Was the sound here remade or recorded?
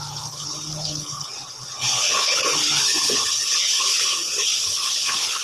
remade